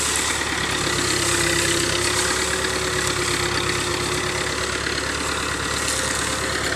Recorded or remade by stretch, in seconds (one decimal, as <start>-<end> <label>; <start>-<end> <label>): 0.0-6.8 recorded